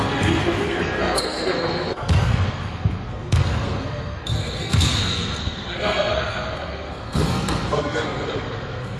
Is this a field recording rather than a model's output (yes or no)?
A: no